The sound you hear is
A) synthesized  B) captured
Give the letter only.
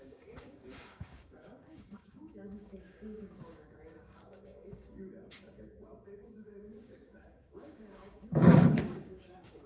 A